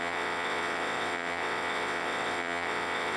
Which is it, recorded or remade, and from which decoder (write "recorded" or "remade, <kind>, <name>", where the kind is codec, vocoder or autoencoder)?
remade, vocoder, WaveNeXt